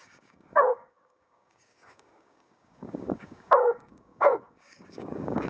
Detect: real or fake fake